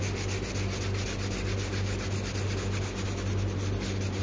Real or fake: real